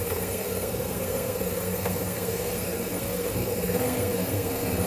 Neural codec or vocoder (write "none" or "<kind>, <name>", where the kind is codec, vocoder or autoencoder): codec, SNAC